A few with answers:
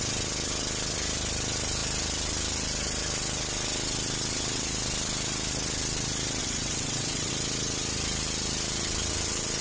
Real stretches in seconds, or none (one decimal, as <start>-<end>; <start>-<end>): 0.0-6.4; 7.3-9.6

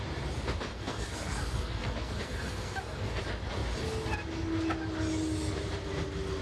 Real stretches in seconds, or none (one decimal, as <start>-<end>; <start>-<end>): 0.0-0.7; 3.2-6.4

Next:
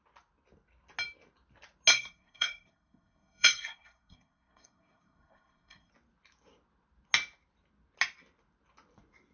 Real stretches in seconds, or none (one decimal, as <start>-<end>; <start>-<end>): 0.0-1.9; 5.9-9.3

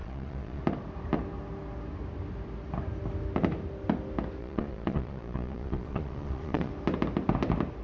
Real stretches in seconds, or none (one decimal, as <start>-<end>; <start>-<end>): 0.6-4.4; 6.7-7.8